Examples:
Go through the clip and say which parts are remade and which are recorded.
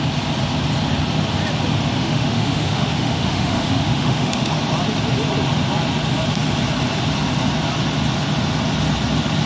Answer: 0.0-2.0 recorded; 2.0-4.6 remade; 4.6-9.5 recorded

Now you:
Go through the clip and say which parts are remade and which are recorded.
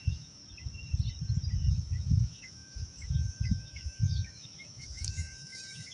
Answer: 0.0-0.4 remade; 0.4-1.7 recorded; 1.7-5.9 remade